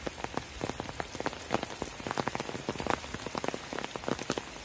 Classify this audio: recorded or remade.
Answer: recorded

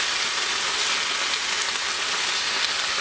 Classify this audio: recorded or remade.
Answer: recorded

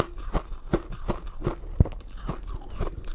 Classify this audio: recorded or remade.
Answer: recorded